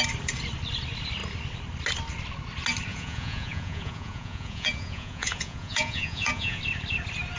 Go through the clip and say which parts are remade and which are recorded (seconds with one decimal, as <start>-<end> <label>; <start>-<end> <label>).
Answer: 0.0-2.9 recorded; 2.9-6.6 remade; 6.6-7.4 recorded

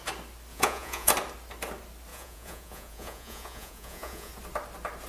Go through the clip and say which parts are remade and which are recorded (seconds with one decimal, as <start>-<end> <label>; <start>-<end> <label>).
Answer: 0.0-0.5 recorded; 0.5-1.1 remade; 1.1-2.1 recorded; 2.1-4.3 remade; 4.3-5.1 recorded

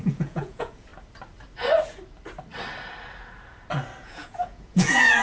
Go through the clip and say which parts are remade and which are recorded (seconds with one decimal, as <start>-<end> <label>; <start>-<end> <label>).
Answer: 0.0-0.9 remade; 0.9-4.0 recorded; 4.0-5.2 remade

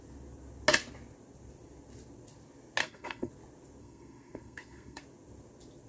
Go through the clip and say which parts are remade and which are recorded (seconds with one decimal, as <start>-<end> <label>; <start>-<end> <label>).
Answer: 0.0-2.8 recorded; 2.8-3.3 remade; 3.3-3.8 recorded; 3.8-5.0 remade; 5.0-5.9 recorded

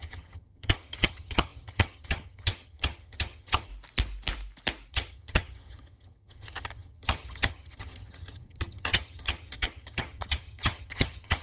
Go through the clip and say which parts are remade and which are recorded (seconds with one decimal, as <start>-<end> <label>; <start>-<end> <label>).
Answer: 0.0-3.7 remade; 3.7-4.9 recorded; 4.9-11.4 remade

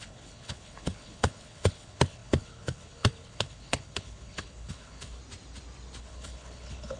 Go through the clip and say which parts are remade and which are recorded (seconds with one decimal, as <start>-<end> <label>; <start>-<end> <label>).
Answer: 0.0-5.2 remade; 5.2-6.0 recorded; 6.0-7.0 remade